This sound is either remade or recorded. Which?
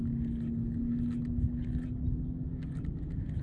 recorded